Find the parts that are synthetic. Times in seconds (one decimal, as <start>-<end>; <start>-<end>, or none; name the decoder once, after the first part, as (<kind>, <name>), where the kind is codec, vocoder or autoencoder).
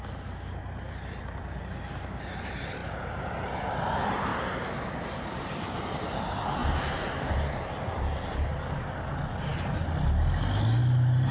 none